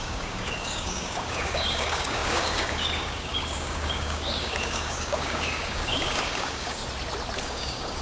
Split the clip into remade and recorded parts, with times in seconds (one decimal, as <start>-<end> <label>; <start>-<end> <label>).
0.0-6.8 remade; 6.8-7.4 recorded; 7.4-8.0 remade